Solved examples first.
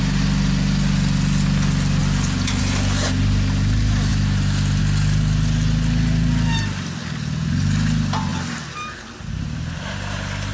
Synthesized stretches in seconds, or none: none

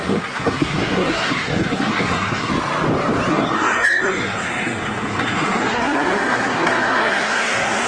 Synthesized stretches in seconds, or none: 0.0-2.5 (codec, SNAC); 3.3-7.9